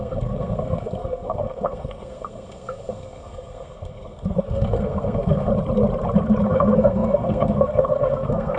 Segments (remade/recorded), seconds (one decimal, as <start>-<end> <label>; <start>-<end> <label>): 0.0-5.5 remade; 5.5-6.5 recorded; 6.5-8.6 remade